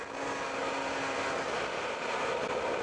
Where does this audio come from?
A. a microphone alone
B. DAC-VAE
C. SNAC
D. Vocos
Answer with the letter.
A